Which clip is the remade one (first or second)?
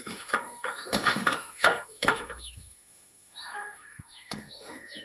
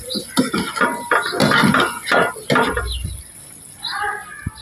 first